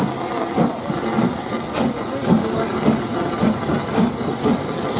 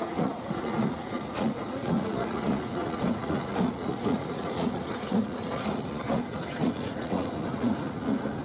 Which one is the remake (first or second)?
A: second